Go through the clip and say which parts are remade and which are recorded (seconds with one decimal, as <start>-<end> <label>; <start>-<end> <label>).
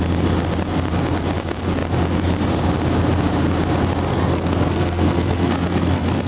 0.0-4.1 recorded; 4.1-6.3 remade